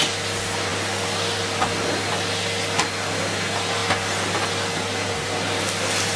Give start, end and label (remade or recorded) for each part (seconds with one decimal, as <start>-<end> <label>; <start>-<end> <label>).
0.0-6.2 recorded